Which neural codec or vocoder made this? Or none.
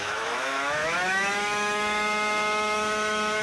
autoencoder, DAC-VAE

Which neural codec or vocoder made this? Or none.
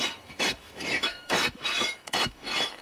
autoencoder, DAC-VAE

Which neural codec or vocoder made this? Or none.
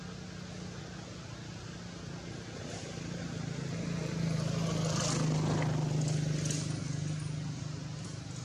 none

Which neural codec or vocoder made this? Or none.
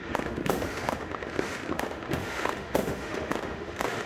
autoencoder, DAC-VAE